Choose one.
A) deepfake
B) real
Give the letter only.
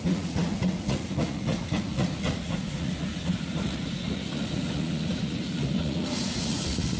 A